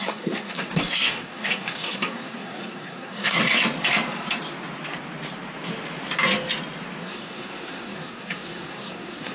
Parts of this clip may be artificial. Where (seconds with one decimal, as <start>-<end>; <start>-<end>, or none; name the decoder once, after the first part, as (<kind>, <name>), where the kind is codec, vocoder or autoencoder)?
0.0-3.4 (codec, SNAC); 7.0-9.3